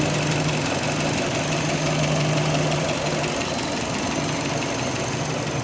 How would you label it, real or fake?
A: real